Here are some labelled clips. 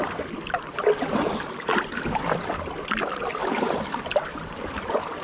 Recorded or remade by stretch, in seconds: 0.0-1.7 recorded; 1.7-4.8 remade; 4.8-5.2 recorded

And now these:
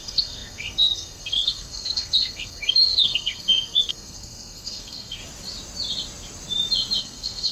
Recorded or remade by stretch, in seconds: 0.0-5.2 remade; 5.2-7.0 recorded; 7.0-7.5 remade

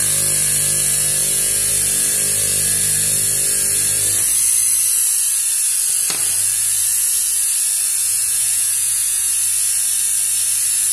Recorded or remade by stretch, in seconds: 0.0-1.2 recorded; 1.2-1.7 remade; 1.7-8.0 recorded; 8.0-9.3 remade; 9.3-10.9 recorded